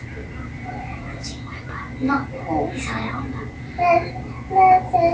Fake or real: real